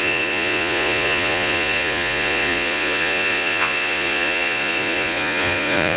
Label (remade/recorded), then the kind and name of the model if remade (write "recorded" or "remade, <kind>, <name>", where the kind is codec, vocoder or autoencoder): remade, vocoder, Vocos